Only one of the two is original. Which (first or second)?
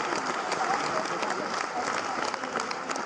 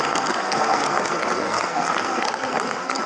first